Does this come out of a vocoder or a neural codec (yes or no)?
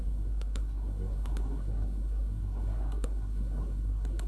yes